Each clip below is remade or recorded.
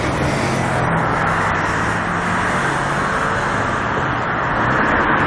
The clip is recorded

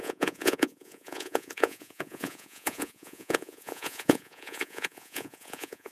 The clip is remade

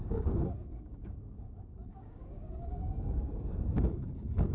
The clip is remade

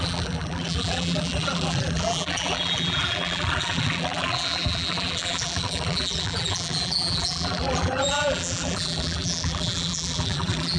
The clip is remade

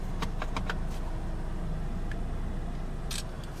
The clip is recorded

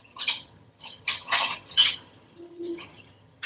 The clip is remade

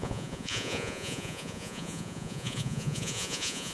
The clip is remade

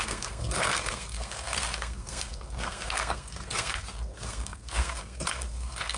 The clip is remade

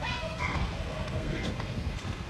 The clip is remade